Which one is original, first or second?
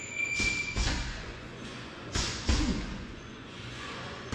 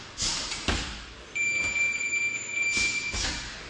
second